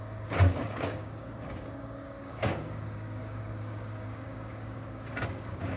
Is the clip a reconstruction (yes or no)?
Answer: yes